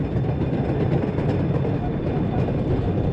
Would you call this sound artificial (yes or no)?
no